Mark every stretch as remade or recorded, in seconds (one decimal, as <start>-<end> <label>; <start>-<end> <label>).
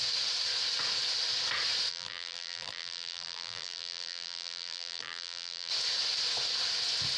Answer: 0.0-1.9 recorded; 1.9-5.7 remade; 5.7-7.2 recorded